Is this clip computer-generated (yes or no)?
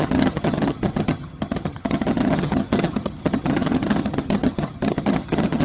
yes